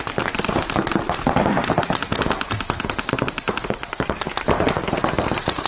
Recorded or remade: recorded